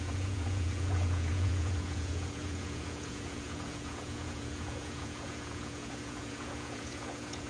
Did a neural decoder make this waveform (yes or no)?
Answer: yes